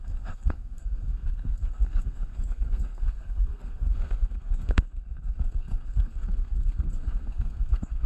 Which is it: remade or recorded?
remade